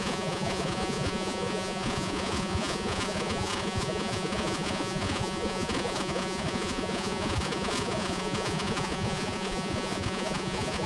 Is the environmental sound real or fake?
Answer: fake